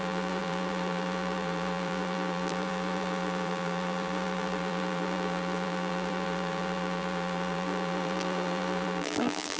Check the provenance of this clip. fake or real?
fake